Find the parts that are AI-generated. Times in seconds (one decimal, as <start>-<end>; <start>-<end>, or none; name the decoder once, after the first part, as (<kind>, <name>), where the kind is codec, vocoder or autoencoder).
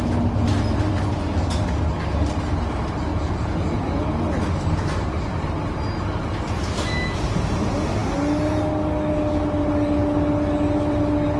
3.1-4.0 (vocoder, Vocos)